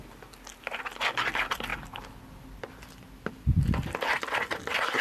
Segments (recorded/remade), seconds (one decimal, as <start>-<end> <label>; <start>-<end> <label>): 0.0-5.0 recorded